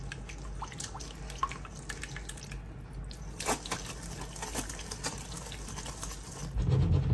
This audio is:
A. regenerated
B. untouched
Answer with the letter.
B